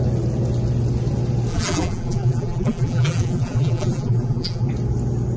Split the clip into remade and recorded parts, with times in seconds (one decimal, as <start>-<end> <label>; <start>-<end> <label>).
0.0-1.5 recorded; 1.5-4.7 remade; 4.7-5.4 recorded